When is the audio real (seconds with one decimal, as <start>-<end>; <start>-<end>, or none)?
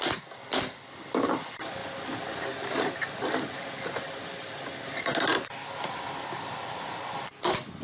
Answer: 0.0-7.8